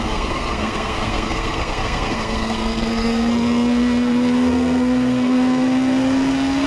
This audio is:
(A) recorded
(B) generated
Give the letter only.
B